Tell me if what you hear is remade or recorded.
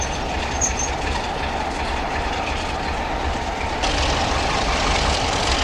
remade